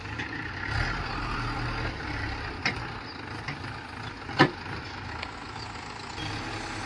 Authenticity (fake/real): real